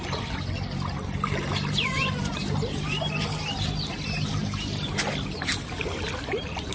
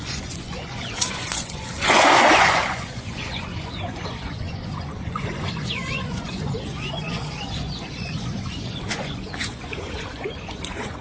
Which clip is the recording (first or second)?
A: first